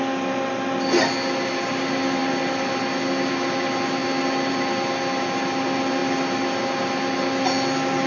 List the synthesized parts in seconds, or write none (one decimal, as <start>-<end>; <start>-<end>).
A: none